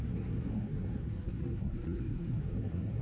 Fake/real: fake